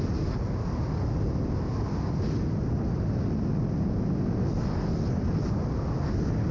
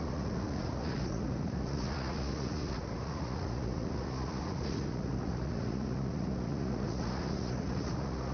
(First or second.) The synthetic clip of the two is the second